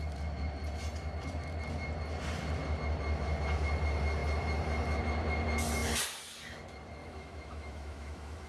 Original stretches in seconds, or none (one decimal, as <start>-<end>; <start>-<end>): 0.0-7.0